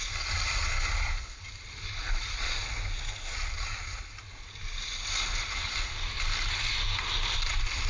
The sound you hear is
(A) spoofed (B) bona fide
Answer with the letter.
B